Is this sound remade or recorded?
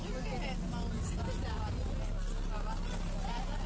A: recorded